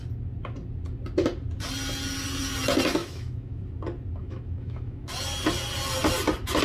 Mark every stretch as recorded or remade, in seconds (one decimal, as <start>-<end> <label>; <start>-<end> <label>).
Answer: 0.0-3.0 recorded; 3.0-3.6 remade; 3.6-4.2 recorded; 4.2-5.1 remade; 5.1-6.6 recorded